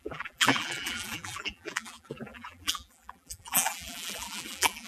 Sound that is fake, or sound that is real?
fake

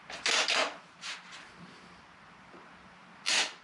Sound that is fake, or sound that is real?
real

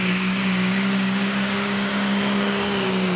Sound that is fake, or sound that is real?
fake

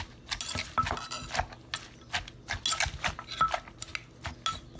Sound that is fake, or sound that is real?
real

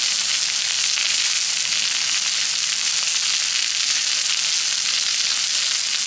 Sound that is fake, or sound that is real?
real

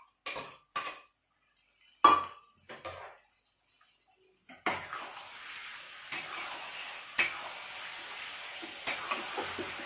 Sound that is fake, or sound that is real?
real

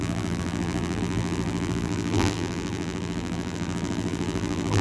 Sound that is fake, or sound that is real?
fake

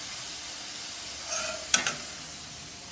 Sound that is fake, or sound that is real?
real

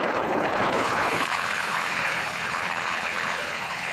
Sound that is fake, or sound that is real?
fake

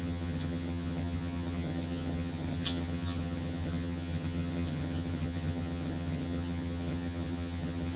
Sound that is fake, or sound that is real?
fake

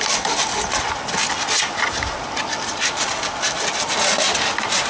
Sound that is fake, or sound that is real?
real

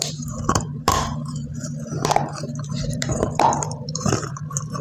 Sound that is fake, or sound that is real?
fake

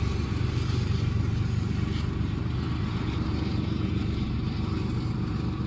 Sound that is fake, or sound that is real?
fake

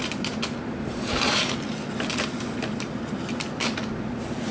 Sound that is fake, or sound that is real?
real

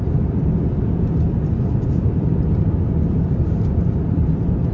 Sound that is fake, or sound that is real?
real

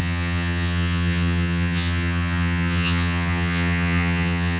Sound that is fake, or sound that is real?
fake